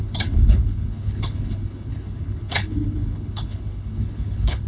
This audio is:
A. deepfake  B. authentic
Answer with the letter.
A